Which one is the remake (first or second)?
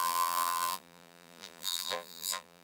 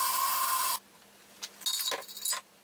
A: first